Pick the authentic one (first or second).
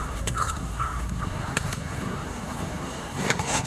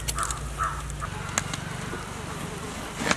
second